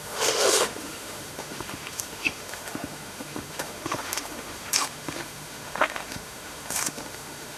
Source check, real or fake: fake